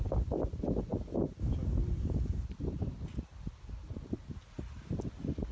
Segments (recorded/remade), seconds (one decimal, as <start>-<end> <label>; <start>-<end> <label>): 0.0-5.5 recorded